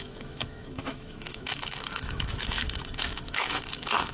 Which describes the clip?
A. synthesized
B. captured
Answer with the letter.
A